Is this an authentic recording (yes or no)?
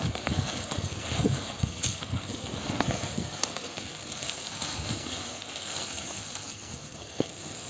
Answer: no